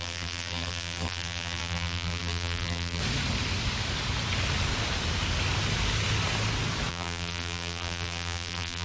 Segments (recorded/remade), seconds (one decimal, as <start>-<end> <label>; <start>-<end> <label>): 0.0-3.0 remade; 3.0-6.9 recorded; 6.9-8.8 remade